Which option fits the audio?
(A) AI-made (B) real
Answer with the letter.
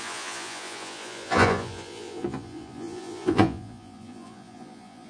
A